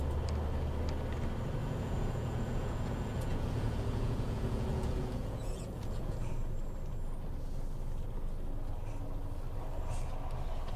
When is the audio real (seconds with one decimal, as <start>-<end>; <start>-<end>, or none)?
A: 0.0-1.6; 6.3-10.8